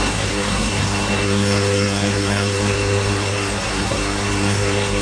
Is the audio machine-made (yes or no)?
yes